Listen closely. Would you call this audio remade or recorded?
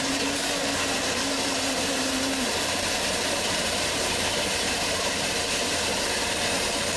remade